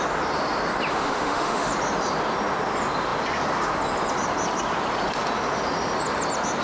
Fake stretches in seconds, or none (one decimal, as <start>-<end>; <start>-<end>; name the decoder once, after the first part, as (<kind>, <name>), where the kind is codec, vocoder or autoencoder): 0.9-1.7 (autoencoder, DAC-VAE)